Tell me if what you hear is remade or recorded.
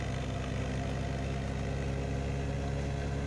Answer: recorded